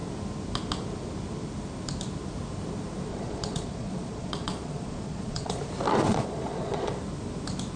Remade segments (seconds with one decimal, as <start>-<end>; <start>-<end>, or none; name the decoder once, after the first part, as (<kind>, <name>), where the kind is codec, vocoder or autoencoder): 3.1-5.6 (vocoder, Vocos); 6.1-6.9